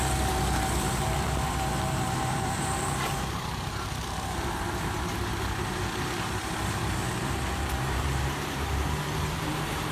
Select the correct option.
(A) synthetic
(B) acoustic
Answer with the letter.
A